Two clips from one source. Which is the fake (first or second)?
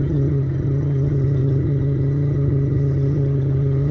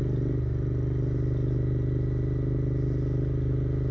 first